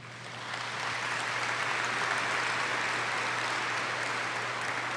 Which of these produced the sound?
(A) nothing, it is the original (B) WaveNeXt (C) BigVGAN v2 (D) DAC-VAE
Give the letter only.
A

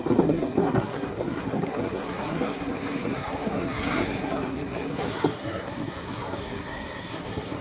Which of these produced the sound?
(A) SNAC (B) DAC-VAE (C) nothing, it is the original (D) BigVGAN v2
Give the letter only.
A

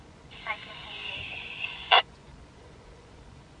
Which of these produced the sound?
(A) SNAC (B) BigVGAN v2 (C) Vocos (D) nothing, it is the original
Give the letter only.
C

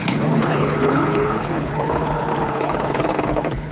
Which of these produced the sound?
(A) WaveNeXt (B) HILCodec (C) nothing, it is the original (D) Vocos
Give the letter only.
B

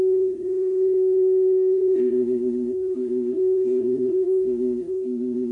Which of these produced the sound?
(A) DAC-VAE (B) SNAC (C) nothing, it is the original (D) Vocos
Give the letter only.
B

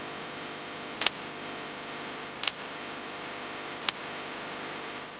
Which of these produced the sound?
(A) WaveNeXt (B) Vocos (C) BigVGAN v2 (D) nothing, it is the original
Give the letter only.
D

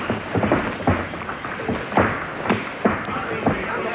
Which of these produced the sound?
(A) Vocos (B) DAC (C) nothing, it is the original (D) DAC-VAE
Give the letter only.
C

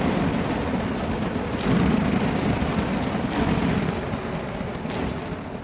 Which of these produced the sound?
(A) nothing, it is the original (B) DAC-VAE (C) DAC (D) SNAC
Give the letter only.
A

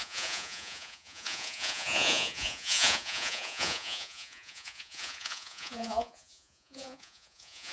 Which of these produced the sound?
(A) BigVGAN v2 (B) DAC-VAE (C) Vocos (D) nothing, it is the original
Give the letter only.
C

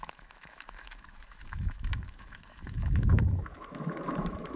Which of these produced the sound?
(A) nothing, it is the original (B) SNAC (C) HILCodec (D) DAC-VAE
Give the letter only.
D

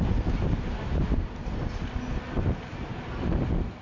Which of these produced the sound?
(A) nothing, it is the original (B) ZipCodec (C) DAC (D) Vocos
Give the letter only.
A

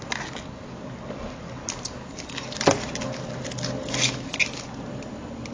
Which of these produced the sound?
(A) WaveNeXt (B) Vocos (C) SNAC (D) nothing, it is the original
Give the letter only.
D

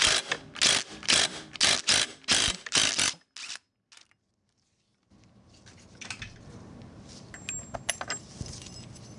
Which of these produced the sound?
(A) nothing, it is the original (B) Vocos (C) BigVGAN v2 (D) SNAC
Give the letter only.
A